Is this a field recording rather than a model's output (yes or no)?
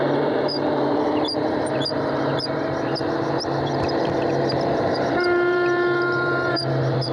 no